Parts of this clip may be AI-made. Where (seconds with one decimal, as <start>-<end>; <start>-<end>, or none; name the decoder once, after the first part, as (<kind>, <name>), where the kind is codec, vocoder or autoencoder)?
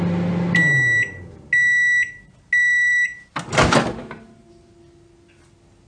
none